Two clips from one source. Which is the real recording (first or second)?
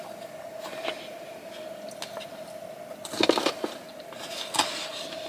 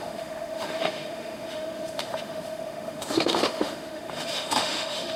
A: first